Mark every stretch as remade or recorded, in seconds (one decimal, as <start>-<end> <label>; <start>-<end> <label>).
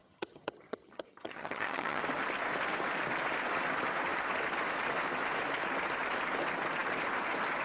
0.0-2.0 remade; 2.0-7.6 recorded